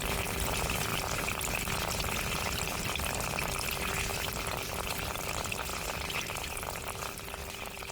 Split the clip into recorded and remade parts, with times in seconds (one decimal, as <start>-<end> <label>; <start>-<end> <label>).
0.0-0.9 recorded; 0.9-1.8 remade; 1.8-4.1 recorded; 4.1-5.3 remade; 5.3-7.9 recorded